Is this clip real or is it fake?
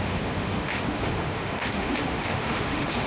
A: fake